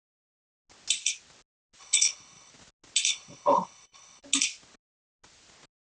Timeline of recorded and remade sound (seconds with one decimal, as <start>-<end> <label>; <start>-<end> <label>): 0.0-1.8 recorded; 1.8-2.5 remade; 2.5-3.1 recorded; 3.1-4.2 remade; 4.2-5.9 recorded